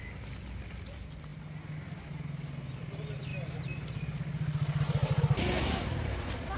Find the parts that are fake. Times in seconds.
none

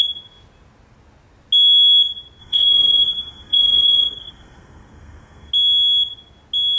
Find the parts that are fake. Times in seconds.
2.4-5.5